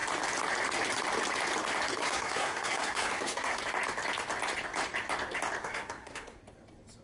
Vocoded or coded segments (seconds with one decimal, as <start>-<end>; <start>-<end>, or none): 2.0-3.6; 5.6-6.4